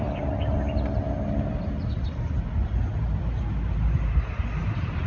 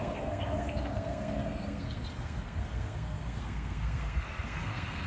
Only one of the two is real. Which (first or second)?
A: first